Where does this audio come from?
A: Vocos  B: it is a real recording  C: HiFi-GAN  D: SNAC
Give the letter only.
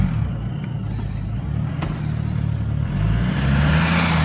B